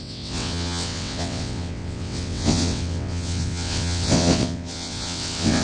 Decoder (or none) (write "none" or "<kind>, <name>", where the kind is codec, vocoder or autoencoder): vocoder, WaveNeXt